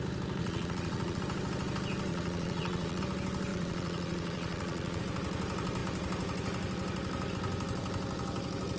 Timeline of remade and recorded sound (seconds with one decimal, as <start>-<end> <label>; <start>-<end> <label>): 0.0-0.4 recorded; 0.4-1.2 remade; 1.2-2.1 recorded; 2.1-3.0 remade; 3.0-3.5 recorded; 3.5-5.0 remade; 5.0-8.8 recorded